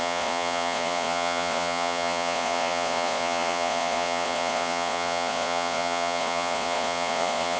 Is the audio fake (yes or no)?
yes